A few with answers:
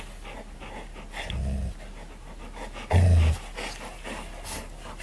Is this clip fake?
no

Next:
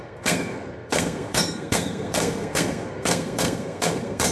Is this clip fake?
yes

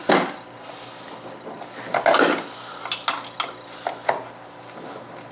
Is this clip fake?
no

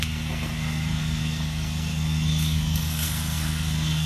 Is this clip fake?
yes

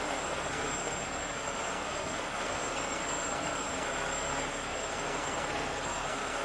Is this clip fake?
yes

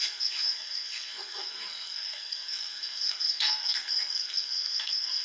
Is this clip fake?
yes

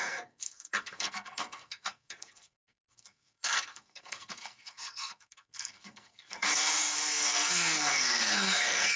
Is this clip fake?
yes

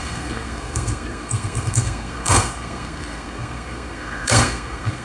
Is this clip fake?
yes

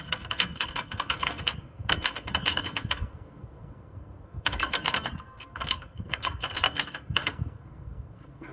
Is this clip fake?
yes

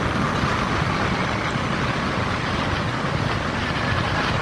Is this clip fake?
no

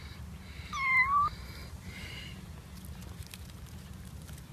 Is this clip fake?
no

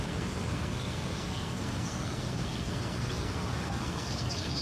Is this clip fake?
yes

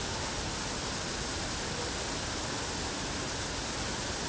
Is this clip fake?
no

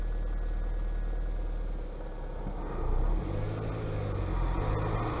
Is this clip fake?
no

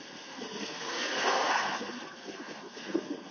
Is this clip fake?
yes